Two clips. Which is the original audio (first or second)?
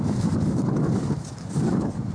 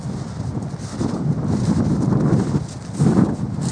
second